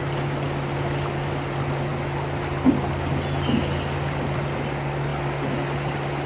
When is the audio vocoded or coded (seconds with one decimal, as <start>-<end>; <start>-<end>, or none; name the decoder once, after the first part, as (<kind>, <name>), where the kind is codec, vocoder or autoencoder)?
none